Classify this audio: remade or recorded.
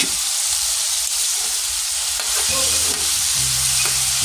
remade